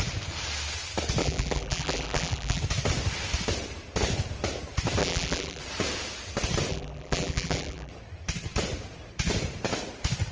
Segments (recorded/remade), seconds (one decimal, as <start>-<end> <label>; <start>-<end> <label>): 0.0-1.2 recorded; 1.2-2.6 remade; 2.6-5.0 recorded; 5.0-5.6 remade; 5.6-6.7 recorded; 6.7-7.9 remade; 7.9-10.3 recorded